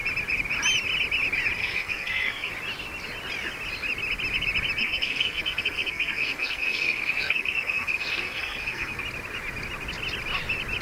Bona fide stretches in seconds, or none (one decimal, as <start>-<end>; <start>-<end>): 0.0-1.6; 2.5-4.8; 9.0-10.8